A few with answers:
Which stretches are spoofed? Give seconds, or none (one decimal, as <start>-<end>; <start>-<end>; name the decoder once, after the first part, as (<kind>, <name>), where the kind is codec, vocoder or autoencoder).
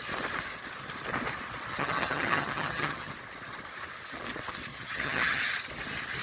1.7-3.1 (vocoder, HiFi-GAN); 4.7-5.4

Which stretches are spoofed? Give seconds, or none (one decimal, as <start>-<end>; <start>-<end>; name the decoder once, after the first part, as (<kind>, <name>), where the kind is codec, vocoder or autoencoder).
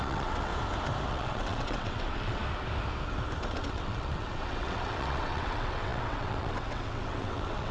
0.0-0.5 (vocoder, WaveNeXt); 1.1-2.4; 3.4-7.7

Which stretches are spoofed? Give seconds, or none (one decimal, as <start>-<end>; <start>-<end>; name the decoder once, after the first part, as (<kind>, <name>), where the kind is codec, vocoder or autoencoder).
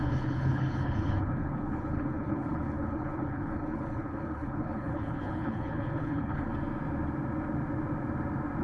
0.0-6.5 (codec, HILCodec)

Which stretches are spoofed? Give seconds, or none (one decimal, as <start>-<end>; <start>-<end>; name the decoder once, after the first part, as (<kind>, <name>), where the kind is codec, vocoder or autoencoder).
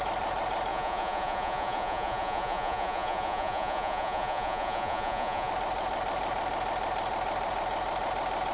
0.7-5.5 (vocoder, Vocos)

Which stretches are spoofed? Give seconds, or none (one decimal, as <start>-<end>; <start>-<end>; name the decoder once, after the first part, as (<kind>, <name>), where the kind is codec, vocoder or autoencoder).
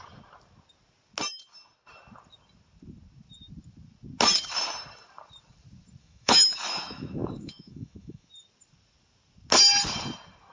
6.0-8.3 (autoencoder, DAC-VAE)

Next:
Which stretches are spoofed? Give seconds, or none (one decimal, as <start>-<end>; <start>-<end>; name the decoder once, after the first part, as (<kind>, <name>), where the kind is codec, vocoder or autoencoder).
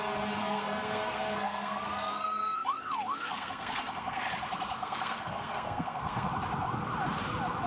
0.4-4.3 (codec, SNAC); 4.8-6.3